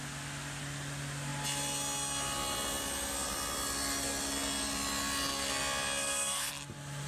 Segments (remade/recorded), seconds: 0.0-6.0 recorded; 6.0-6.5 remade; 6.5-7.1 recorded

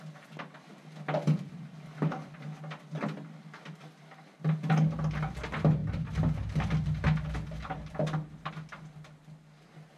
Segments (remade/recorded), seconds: 0.0-10.0 recorded

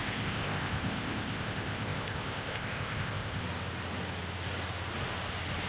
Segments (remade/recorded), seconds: 0.0-3.4 remade; 3.4-5.7 recorded

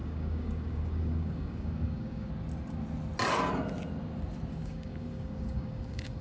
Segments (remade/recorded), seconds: 0.0-2.3 remade; 2.3-4.5 recorded; 4.5-6.2 remade

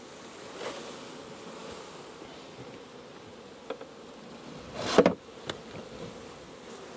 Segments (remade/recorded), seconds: 0.0-7.0 recorded